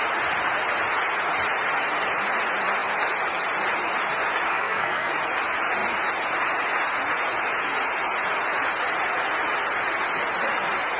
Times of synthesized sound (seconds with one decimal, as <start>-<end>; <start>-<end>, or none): 4.5-5.1

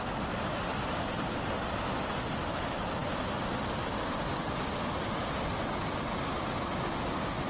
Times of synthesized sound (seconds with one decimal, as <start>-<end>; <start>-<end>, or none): none

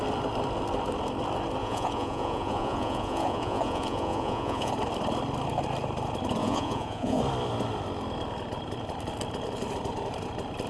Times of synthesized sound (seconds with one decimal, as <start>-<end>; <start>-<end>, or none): 1.6-4.7; 6.4-7.2

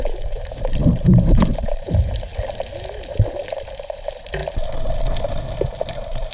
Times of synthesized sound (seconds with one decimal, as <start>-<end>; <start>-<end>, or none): 0.0-2.3; 3.7-4.4; 5.4-6.3

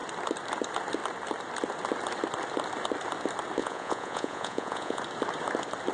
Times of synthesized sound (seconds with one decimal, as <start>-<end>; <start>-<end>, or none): 3.6-5.0

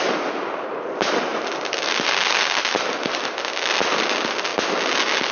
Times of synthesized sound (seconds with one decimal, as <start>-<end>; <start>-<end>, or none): none

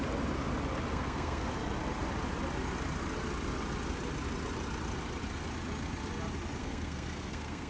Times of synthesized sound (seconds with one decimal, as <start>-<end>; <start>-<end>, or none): 0.9-1.5; 6.6-7.7